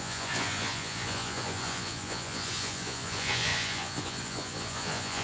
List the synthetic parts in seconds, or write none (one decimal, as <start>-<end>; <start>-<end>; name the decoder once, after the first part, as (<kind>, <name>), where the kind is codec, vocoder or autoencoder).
0.0-5.2 (vocoder, Vocos)